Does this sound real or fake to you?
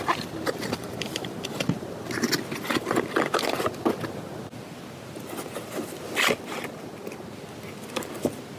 real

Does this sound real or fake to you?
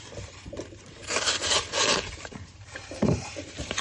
fake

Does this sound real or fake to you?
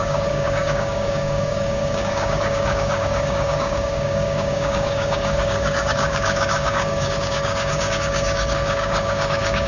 fake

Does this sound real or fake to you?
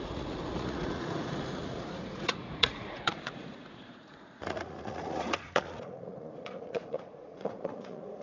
fake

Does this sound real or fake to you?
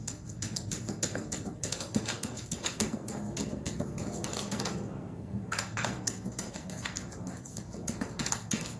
fake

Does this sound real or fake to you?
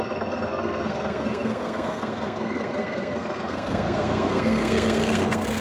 fake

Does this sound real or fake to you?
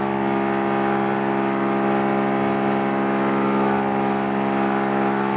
real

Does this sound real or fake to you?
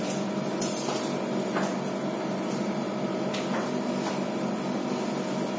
real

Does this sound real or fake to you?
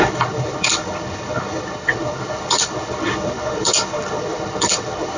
fake